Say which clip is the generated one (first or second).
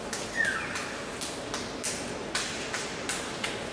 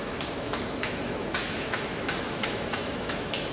second